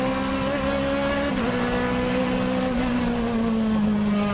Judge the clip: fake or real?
real